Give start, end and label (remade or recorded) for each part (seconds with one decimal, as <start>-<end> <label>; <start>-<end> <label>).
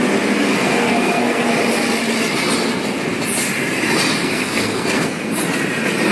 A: 0.0-0.5 recorded; 0.5-1.5 remade; 1.5-4.2 recorded; 4.2-5.4 remade; 5.4-6.1 recorded